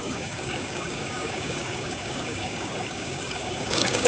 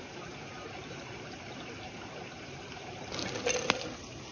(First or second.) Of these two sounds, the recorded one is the second